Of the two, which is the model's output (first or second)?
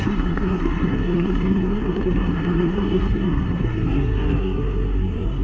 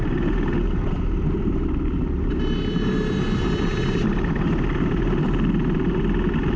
first